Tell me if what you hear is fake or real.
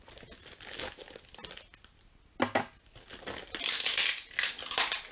real